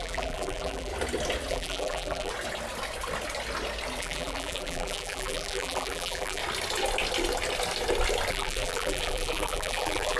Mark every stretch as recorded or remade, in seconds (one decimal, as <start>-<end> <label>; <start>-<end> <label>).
0.0-0.9 remade; 0.9-1.5 recorded; 1.5-2.3 remade; 2.3-4.0 recorded; 4.0-6.4 remade; 6.4-8.3 recorded; 8.3-10.2 remade